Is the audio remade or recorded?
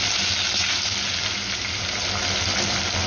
recorded